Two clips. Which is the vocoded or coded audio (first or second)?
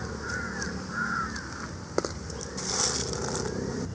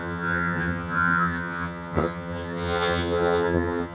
second